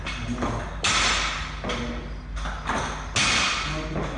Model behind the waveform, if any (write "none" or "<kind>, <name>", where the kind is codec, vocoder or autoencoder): none